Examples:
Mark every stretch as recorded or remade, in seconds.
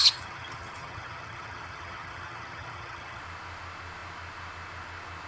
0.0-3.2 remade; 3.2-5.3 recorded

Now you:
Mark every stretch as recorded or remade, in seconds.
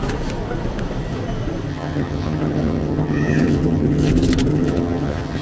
0.0-1.7 recorded; 1.7-4.1 remade; 4.1-4.5 recorded; 4.5-5.4 remade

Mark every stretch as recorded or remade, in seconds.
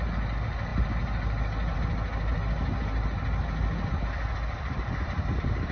0.0-5.7 recorded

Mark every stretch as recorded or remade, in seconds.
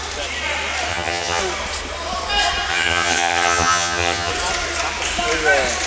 0.0-0.9 recorded; 0.9-1.4 remade; 1.4-2.7 recorded; 2.7-4.3 remade; 4.3-5.9 recorded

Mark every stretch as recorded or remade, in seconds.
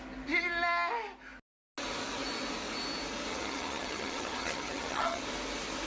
0.0-3.3 recorded; 3.3-5.2 remade; 5.2-5.9 recorded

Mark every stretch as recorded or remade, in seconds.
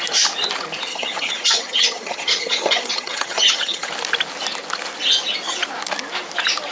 0.0-0.9 recorded; 0.9-3.9 remade; 3.9-6.7 recorded